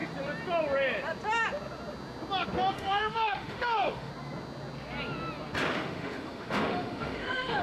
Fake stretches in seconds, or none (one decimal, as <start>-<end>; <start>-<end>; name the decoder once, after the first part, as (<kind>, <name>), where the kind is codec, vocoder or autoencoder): 2.7-4.1 (autoencoder, DAC-VAE); 5.7-7.6